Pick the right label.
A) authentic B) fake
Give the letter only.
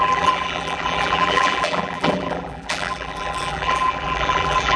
B